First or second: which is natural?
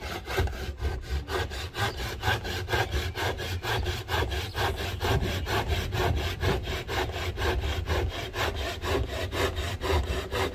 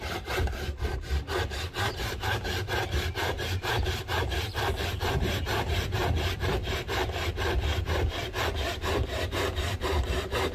first